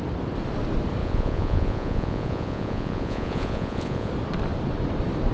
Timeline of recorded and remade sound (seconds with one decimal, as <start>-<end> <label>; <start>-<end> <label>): 0.0-1.0 recorded; 1.0-4.1 remade; 4.1-5.3 recorded